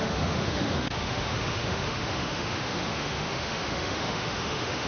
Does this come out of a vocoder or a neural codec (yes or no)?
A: yes